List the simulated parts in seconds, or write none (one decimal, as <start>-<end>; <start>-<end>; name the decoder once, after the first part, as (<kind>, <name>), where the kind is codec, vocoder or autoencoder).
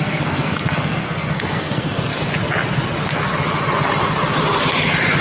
0.0-2.1 (codec, SNAC)